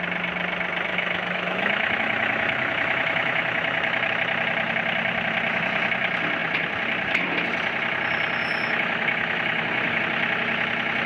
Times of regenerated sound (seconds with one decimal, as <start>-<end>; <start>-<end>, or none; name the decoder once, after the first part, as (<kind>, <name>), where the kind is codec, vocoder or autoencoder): 0.9-4.1 (autoencoder, DAC-VAE); 8.4-10.0